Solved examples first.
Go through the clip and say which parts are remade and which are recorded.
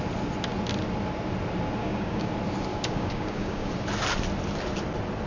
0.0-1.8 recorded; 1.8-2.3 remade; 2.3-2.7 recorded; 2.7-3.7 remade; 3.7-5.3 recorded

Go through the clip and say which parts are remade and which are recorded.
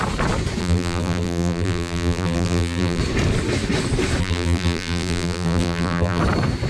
0.0-0.6 recorded; 0.6-3.0 remade; 3.0-4.2 recorded; 4.2-6.2 remade; 6.2-6.7 recorded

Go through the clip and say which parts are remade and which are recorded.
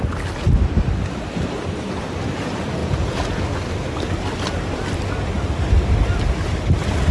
0.0-2.8 recorded; 2.8-3.4 remade; 3.4-7.1 recorded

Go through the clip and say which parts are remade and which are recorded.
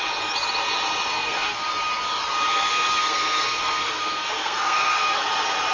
0.0-1.1 recorded; 1.1-1.7 remade; 1.7-2.7 recorded; 2.7-5.2 remade; 5.2-5.7 recorded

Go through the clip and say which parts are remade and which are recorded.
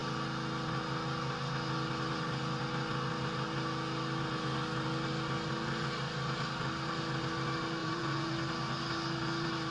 0.0-7.8 recorded; 7.8-8.3 remade; 8.3-9.7 recorded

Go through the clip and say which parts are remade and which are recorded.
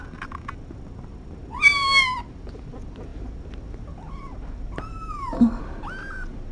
0.0-4.9 recorded; 4.9-5.6 remade; 5.6-6.5 recorded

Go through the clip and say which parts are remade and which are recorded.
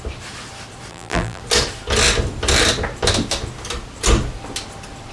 0.0-0.9 recorded; 0.9-1.4 remade; 1.4-5.1 recorded